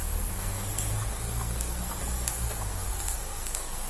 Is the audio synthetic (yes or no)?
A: yes